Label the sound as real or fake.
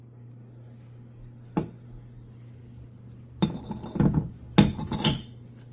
real